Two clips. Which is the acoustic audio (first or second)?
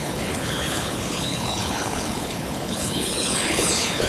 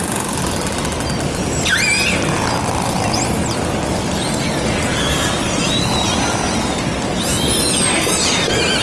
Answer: second